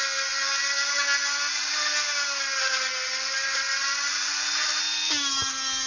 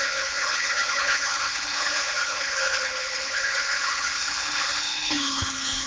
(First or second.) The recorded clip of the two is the first